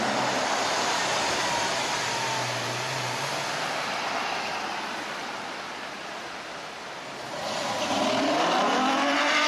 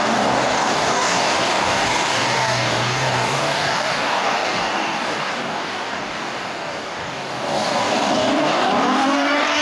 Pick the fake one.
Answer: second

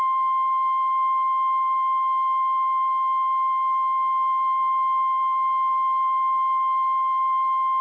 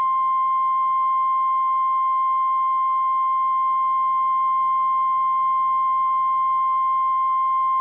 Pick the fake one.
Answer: first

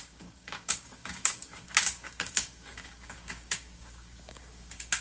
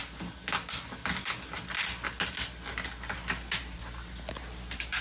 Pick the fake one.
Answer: first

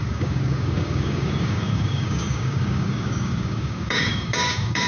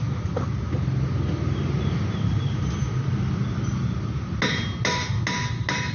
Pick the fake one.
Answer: first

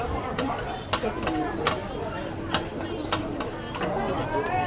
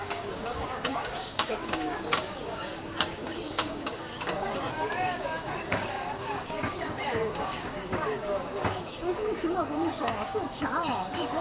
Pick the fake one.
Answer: second